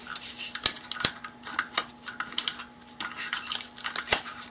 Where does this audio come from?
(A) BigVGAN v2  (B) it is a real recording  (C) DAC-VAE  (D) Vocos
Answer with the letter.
B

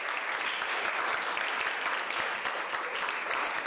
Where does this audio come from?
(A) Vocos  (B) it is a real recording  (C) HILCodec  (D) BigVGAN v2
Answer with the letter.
B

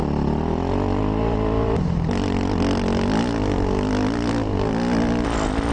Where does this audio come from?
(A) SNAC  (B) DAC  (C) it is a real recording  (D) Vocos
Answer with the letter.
C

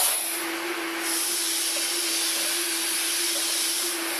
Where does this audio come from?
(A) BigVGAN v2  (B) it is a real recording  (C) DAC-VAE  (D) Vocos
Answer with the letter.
B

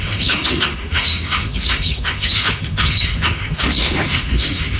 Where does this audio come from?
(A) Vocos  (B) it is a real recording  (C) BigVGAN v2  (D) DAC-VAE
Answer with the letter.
D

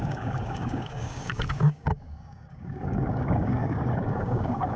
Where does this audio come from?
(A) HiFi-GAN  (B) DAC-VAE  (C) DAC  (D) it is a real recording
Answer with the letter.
C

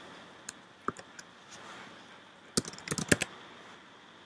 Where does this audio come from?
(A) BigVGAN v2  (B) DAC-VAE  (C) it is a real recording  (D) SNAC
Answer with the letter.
C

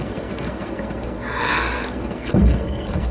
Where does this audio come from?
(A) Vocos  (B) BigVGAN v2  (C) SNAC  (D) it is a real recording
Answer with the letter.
C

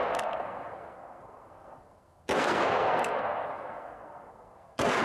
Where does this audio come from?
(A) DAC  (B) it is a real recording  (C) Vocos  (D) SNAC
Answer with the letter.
D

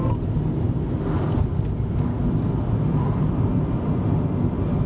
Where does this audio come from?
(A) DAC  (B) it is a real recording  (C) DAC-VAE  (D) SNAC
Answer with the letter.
B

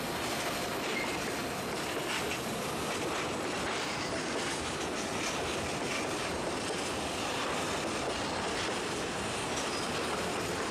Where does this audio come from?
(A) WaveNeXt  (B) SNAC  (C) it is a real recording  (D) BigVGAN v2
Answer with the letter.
D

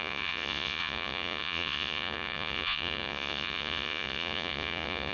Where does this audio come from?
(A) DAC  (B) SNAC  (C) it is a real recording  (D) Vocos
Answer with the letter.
D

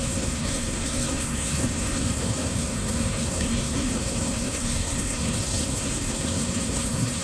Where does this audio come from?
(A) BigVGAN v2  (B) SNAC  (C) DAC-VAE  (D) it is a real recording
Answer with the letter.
B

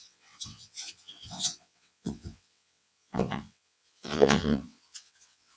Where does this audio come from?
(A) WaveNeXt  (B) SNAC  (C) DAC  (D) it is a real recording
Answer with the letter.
A